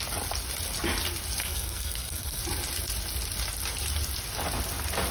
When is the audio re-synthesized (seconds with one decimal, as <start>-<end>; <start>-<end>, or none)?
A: 1.4-2.4